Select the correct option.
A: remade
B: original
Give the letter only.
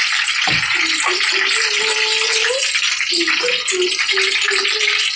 B